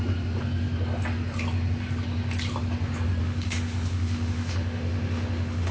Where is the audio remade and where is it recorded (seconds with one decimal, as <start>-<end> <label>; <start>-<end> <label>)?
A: 0.0-3.2 recorded; 3.2-5.7 remade